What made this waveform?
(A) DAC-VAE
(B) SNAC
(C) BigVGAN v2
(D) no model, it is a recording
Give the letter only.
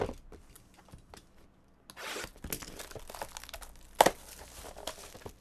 D